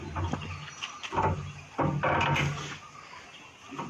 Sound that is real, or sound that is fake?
real